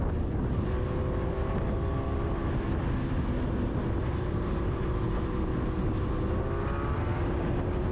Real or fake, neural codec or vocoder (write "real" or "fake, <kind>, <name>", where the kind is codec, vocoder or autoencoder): real